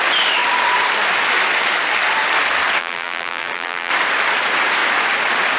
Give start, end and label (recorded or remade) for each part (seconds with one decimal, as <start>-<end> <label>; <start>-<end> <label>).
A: 0.0-2.8 recorded; 2.8-3.9 remade; 3.9-5.6 recorded